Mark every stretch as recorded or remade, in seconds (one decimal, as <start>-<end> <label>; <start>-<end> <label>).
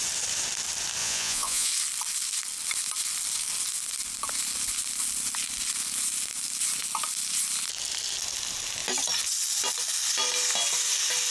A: 0.0-1.0 recorded; 1.0-1.7 remade; 1.7-11.3 recorded